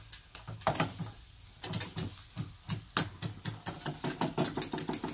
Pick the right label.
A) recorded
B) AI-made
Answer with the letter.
A